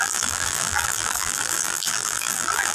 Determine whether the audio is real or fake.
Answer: fake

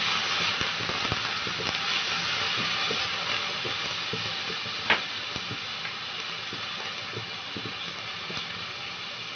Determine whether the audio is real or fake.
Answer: real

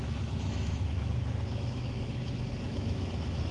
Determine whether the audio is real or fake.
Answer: fake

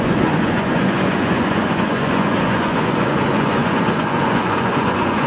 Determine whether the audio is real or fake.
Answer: fake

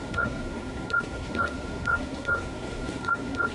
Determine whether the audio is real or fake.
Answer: fake